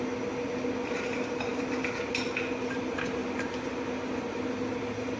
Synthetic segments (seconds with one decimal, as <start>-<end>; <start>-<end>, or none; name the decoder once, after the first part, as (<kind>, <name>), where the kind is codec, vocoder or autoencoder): none